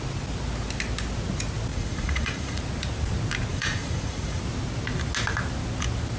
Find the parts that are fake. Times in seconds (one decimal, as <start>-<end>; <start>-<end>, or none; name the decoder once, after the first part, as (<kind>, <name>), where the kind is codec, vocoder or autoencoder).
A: 1.7-2.6 (vocoder, Vocos); 3.5-4.4